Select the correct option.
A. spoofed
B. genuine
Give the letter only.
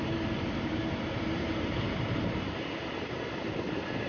A